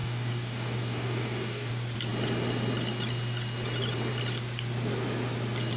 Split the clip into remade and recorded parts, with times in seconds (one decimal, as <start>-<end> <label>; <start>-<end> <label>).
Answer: 0.0-1.7 remade; 1.7-5.8 recorded